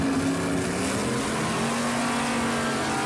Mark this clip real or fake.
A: real